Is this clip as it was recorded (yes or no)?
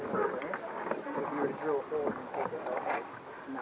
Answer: yes